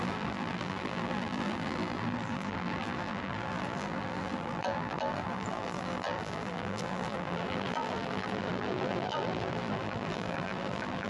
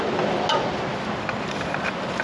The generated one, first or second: first